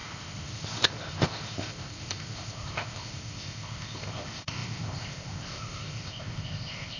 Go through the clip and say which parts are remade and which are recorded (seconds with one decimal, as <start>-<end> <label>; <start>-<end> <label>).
0.0-7.0 remade